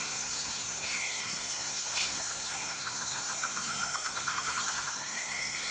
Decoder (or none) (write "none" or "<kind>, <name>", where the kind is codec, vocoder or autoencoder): codec, SNAC